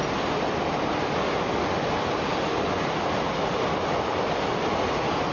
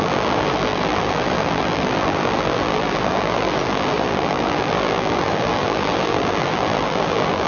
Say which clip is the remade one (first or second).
second